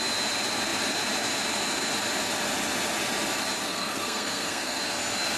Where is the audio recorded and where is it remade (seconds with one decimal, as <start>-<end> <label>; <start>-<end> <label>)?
0.0-3.6 recorded; 3.6-4.8 remade; 4.8-5.4 recorded